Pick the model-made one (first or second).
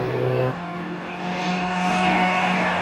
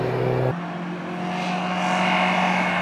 first